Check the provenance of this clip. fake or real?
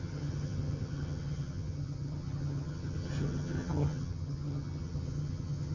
fake